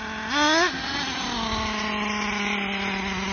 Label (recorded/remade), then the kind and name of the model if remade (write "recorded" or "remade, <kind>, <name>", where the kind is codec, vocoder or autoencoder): recorded